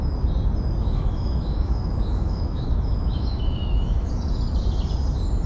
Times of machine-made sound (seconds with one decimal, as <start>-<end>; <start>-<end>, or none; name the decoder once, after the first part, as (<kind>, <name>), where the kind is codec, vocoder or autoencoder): 0.8-4.1 (autoencoder, DAC-VAE)